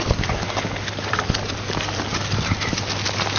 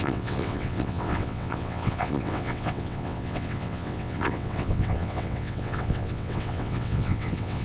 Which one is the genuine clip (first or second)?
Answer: first